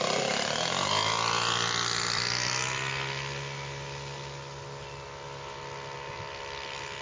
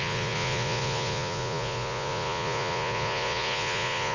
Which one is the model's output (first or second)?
second